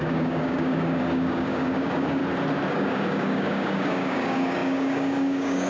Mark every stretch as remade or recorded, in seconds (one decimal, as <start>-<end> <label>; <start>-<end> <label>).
0.0-2.2 remade; 2.2-2.7 recorded; 2.7-5.7 remade